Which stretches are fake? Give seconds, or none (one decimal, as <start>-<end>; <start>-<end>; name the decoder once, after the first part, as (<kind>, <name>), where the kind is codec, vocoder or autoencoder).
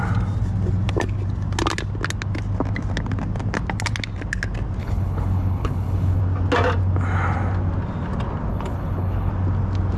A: 4.8-6.2 (codec, HILCodec); 8.5-9.3